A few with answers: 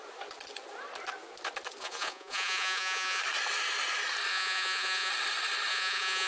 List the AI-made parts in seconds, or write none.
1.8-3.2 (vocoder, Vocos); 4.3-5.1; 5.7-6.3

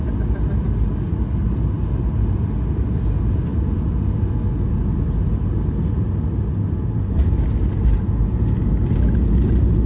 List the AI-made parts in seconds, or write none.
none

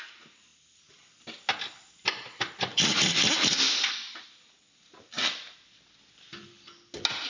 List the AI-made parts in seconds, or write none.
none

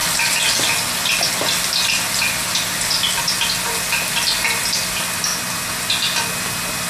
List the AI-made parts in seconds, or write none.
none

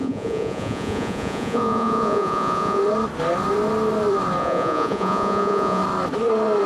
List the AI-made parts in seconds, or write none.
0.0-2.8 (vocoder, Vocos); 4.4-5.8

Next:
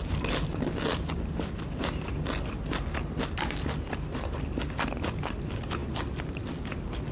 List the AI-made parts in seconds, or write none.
none

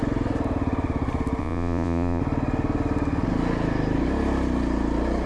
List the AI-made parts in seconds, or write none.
1.4-2.2 (vocoder, Vocos)